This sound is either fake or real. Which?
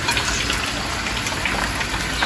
real